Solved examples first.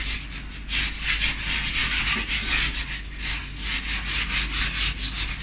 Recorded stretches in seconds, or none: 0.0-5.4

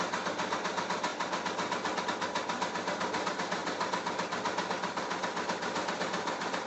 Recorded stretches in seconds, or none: 0.0-6.7

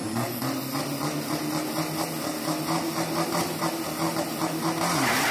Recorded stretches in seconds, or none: 0.0-5.3